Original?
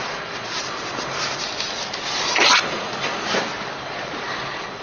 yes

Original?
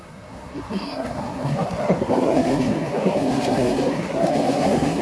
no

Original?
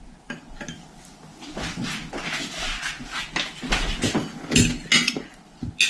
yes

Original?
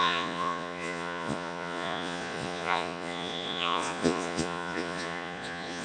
no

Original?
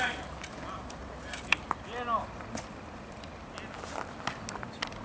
yes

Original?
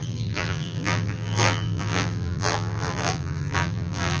no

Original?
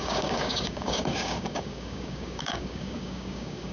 no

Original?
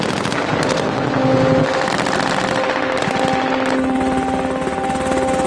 yes